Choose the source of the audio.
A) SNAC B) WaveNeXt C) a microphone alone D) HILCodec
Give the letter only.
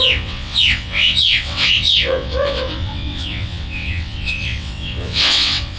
B